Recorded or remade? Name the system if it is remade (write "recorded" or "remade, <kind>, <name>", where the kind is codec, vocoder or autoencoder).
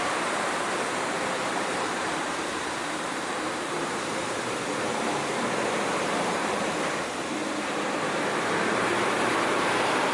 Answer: remade, vocoder, BigVGAN v2